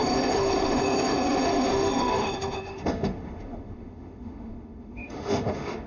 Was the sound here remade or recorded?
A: remade